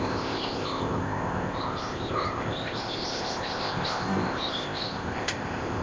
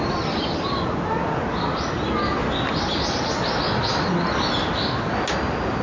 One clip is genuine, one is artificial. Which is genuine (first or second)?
second